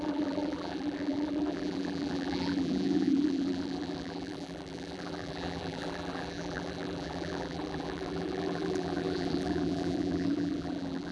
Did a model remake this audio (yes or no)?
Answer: yes